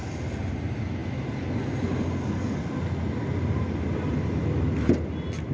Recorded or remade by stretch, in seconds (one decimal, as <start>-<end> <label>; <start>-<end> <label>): 0.0-5.5 recorded